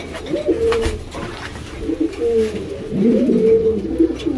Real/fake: real